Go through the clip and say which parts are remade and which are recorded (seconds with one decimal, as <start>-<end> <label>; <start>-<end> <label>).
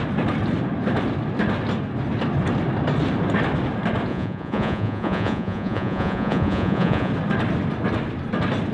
0.0-4.1 recorded; 4.1-7.1 remade; 7.1-8.7 recorded